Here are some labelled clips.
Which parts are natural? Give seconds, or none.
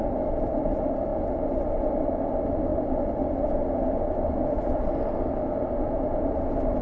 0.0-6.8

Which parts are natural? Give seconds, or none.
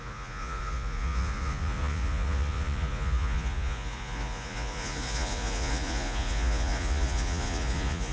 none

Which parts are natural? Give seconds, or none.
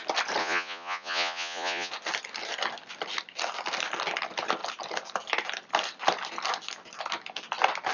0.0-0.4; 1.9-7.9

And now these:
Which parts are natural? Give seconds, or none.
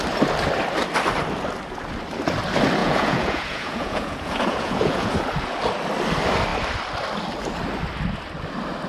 0.0-2.8; 5.1-8.9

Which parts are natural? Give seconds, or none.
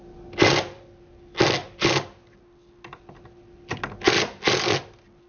0.0-5.3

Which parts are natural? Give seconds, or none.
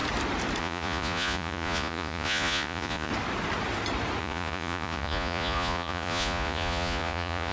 0.0-0.6; 3.1-4.2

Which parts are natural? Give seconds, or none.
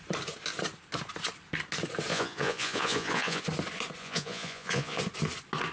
0.0-2.1; 3.4-4.0; 5.0-5.7